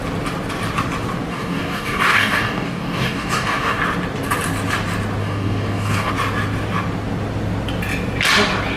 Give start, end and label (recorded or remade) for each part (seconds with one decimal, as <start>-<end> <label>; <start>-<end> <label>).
0.0-1.3 recorded; 1.3-3.8 remade; 3.8-5.2 recorded; 5.2-6.1 remade; 6.1-8.8 recorded